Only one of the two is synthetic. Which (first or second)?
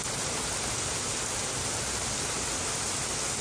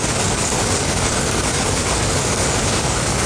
second